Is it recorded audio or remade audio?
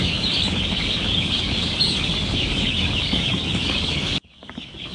remade